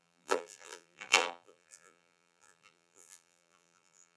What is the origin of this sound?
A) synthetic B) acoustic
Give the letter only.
A